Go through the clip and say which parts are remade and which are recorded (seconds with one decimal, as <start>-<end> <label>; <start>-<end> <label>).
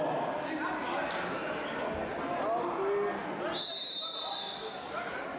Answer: 0.0-5.4 recorded